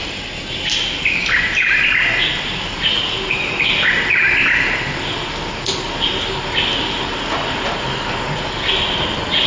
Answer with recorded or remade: recorded